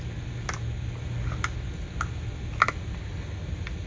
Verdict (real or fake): real